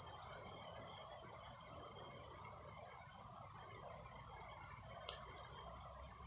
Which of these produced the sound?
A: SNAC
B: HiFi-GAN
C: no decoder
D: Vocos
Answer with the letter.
C